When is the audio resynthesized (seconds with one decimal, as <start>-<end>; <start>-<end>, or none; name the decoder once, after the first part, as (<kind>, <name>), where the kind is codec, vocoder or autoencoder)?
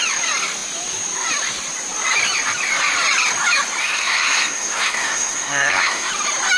3.8-6.1 (codec, SNAC)